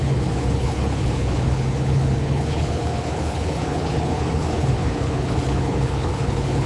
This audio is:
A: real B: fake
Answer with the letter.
B